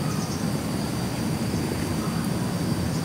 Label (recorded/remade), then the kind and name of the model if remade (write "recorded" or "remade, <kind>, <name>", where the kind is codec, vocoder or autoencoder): recorded